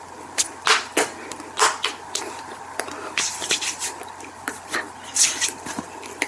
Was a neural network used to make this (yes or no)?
no